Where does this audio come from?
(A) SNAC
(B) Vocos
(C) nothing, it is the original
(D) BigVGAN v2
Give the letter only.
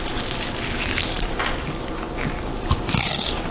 C